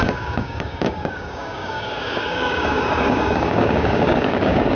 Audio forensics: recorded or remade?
remade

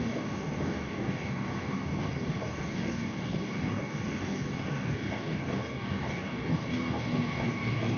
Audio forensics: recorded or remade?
remade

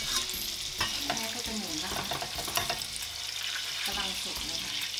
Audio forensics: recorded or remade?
recorded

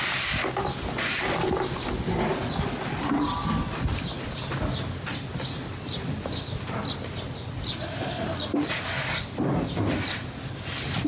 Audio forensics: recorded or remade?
recorded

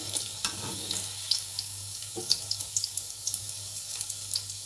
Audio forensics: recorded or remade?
remade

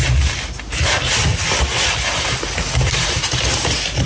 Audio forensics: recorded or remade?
recorded